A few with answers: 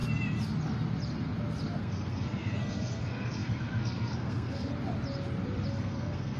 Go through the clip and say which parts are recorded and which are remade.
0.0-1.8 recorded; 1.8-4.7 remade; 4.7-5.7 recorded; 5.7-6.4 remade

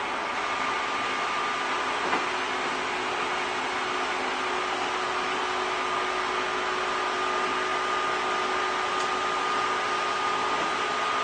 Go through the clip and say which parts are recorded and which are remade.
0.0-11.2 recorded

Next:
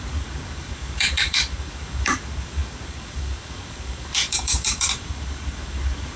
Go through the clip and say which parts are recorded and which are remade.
0.0-6.2 remade

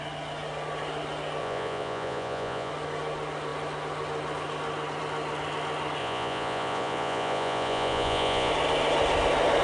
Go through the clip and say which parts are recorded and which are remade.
0.0-1.4 recorded; 1.4-2.7 remade; 2.7-6.0 recorded; 6.0-8.5 remade; 8.5-9.6 recorded